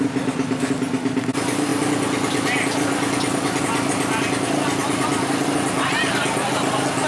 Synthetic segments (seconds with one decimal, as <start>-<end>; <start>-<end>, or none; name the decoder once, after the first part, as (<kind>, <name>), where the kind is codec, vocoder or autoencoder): none